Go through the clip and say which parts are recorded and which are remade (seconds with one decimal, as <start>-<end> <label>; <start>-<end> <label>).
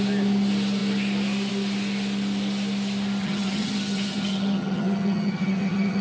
0.0-3.2 recorded; 3.2-6.0 remade